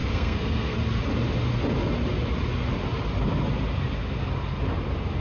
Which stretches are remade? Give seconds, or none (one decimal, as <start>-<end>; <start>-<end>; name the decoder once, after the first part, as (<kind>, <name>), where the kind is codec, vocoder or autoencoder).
0.0-0.8 (codec, SNAC)